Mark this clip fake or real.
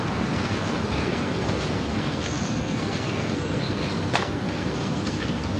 fake